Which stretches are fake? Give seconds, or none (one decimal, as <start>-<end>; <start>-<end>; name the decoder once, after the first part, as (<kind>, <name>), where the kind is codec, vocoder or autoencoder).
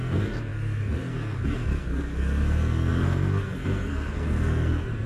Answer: 0.0-5.1 (codec, SNAC)